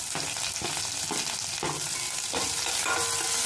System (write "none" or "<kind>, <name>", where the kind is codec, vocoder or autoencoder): none